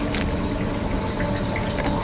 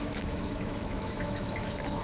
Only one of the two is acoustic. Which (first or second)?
first